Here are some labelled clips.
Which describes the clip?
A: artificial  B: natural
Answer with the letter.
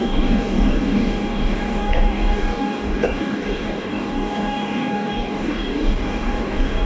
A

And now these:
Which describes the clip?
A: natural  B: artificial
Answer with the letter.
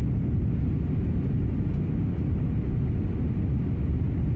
A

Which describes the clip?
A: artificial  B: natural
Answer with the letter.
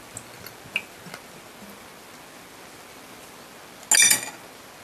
B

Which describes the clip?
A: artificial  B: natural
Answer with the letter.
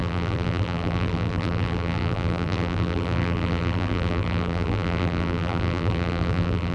A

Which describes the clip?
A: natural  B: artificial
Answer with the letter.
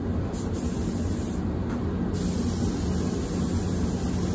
A